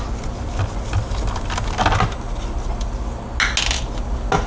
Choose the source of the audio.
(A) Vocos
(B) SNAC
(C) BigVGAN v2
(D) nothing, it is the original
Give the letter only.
D